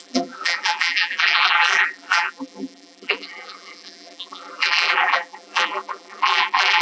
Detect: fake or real fake